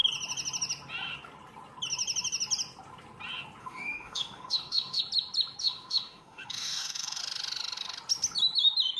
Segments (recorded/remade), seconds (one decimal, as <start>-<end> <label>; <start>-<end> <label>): 0.0-3.6 recorded; 3.6-5.0 remade; 5.0-5.6 recorded; 5.6-7.2 remade; 7.2-9.0 recorded